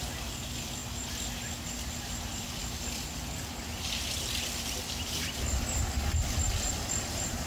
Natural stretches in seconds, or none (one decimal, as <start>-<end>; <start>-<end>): 0.8-2.1

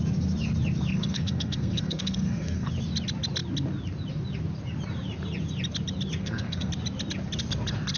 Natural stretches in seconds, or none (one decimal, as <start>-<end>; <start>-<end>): 0.0-0.9; 2.7-6.2; 6.7-8.0